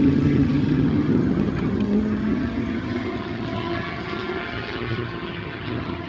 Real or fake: fake